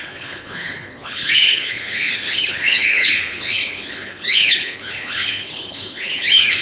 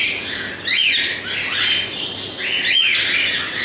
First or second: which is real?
second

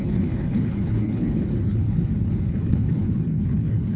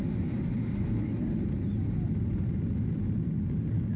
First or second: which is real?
second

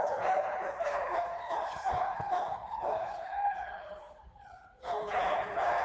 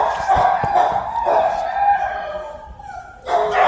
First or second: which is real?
second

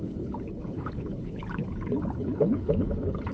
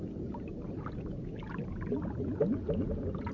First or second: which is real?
second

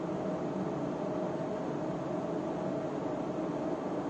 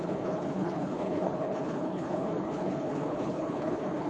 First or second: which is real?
first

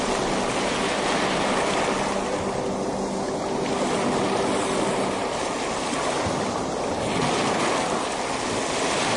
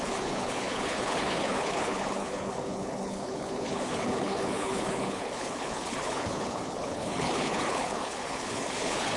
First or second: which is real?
first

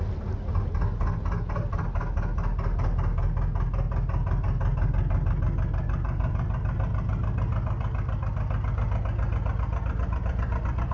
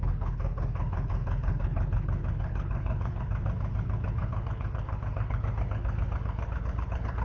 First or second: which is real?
first